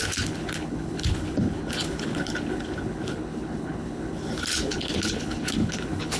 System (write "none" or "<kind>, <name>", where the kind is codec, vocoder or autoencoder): codec, HILCodec